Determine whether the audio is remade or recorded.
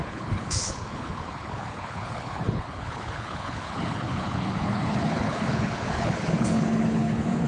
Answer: remade